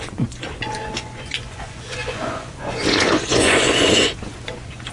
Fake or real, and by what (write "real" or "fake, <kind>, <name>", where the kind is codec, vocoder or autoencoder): fake, vocoder, Vocos